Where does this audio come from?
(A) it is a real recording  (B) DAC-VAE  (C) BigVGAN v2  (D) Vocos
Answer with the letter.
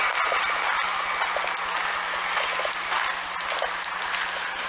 A